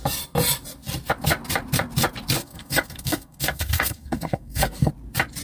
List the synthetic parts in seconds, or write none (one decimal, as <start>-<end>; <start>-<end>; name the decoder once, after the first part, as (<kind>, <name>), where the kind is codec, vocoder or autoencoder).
2.4-4.9 (codec, SNAC)